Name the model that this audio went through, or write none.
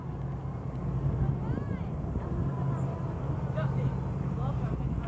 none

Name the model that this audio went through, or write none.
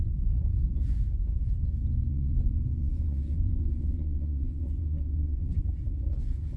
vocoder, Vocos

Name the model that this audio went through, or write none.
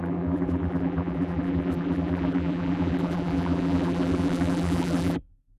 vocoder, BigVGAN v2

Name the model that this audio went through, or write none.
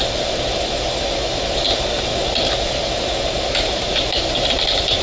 none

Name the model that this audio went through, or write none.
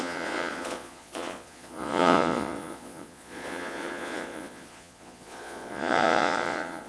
vocoder, Vocos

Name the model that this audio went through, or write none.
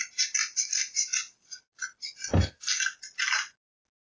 none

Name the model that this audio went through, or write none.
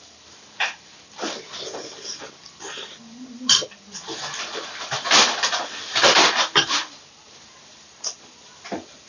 vocoder, BigVGAN v2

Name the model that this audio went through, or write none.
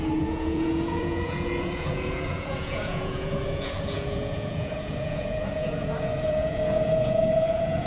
vocoder, Vocos